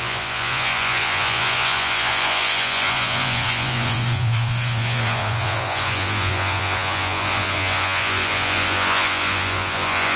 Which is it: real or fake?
fake